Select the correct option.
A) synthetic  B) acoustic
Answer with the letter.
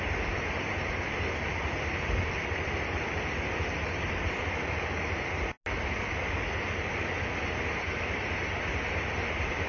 B